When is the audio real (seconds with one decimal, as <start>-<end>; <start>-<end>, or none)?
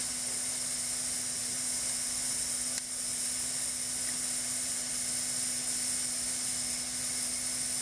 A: 0.0-7.8